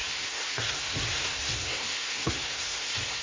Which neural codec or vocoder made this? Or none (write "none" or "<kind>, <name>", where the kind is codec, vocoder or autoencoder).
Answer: codec, SNAC